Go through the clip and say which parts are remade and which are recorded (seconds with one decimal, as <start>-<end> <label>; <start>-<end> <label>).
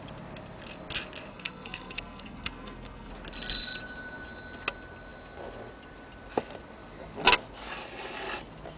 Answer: 0.0-1.3 recorded; 1.3-3.1 remade; 3.1-8.8 recorded